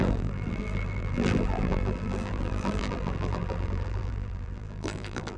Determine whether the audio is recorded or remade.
remade